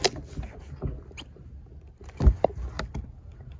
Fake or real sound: real